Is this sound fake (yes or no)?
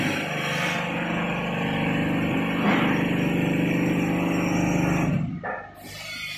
no